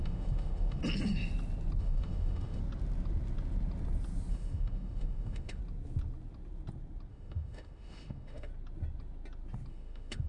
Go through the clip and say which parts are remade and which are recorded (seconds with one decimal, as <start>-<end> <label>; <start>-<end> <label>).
0.0-0.8 remade; 0.8-1.8 recorded; 1.8-2.6 remade; 2.6-4.3 recorded; 4.3-5.6 remade; 5.6-7.1 recorded; 7.1-8.5 remade; 8.5-9.7 recorded; 9.7-10.3 remade